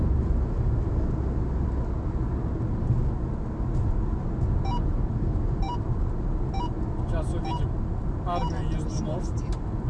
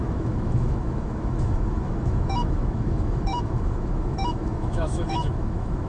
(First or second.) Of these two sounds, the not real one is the second